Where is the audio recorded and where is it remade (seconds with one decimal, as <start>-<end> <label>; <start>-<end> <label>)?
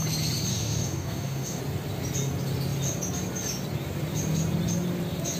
0.0-0.5 recorded; 0.5-1.6 remade; 1.6-5.4 recorded